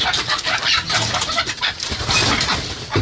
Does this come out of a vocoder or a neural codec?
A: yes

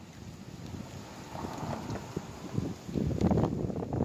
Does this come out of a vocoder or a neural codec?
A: no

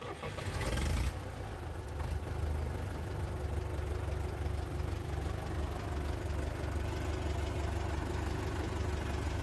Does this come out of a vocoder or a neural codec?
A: no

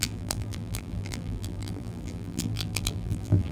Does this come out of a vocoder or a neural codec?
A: yes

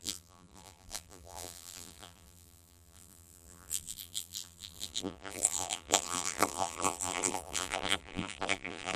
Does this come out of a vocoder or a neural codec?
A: yes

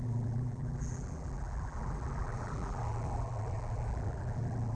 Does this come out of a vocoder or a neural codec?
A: yes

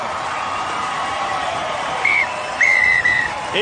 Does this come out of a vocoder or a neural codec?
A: yes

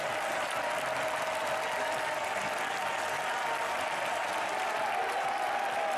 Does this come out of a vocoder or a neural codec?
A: no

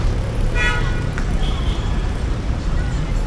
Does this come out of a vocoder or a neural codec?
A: yes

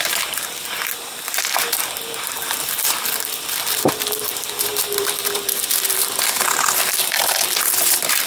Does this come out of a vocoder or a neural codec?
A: yes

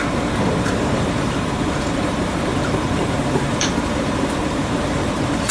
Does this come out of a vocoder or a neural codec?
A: yes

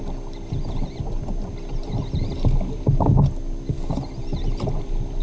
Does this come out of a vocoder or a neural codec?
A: no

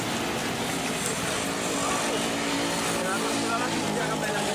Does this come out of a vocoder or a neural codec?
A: no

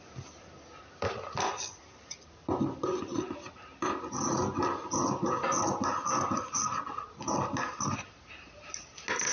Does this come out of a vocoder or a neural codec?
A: no